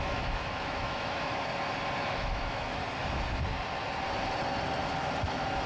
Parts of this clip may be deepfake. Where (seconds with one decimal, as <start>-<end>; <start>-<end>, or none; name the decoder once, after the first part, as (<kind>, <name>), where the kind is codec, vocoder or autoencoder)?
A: 0.0-1.5 (autoencoder, DAC-VAE); 2.1-2.8